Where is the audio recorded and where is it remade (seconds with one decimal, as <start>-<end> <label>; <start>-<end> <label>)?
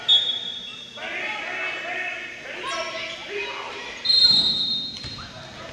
0.0-5.7 recorded